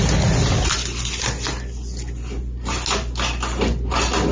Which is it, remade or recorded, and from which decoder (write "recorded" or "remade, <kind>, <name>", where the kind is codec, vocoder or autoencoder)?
recorded